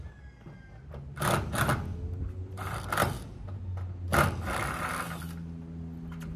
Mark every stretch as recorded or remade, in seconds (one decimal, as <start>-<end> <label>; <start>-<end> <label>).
0.0-6.4 recorded